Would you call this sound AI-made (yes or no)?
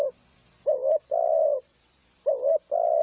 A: no